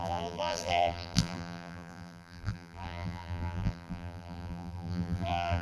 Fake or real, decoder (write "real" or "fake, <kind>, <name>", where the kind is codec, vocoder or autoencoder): fake, vocoder, BigVGAN v2